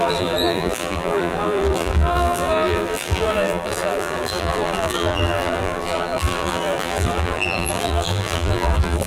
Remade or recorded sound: remade